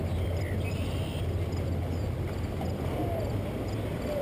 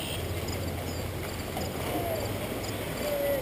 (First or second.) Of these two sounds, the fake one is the first